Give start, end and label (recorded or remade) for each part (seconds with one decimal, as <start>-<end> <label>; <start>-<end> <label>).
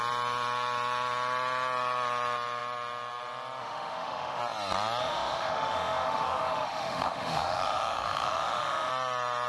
0.0-3.6 recorded; 3.6-4.4 remade; 4.4-5.0 recorded; 5.0-8.9 remade; 8.9-9.5 recorded